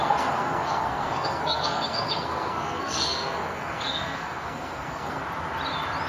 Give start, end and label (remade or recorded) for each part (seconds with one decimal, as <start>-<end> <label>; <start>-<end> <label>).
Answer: 0.0-5.2 remade; 5.2-6.1 recorded